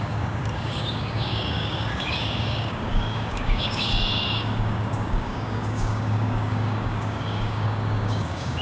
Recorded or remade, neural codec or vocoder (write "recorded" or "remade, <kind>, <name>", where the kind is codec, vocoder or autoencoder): remade, codec, DAC